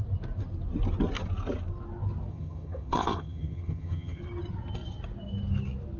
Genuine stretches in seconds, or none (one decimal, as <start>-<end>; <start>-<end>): 0.0-2.3; 4.2-6.0